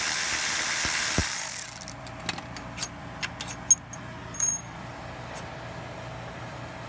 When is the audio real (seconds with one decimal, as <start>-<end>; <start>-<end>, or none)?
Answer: 0.0-6.9